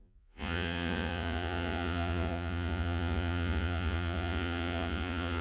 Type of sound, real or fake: fake